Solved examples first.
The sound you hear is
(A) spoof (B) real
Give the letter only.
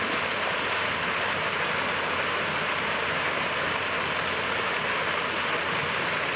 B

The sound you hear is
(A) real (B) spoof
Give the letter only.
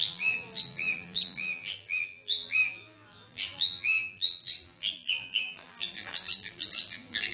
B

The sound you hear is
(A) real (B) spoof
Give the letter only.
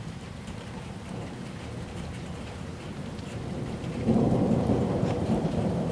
B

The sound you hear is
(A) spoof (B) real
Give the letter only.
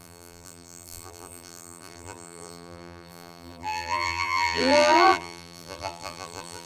A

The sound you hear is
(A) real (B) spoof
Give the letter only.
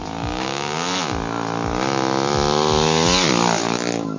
A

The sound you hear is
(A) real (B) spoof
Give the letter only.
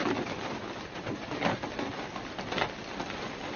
A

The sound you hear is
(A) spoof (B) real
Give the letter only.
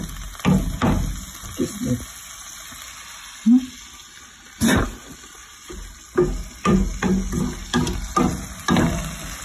B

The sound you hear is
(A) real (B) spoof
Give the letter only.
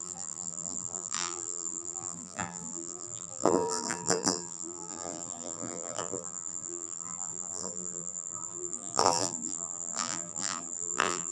B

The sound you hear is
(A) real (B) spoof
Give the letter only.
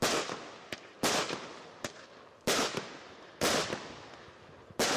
A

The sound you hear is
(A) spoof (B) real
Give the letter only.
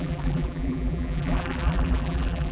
A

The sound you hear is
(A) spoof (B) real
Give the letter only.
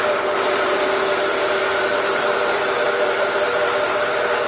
A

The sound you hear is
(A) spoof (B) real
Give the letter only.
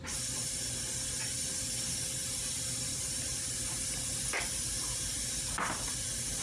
B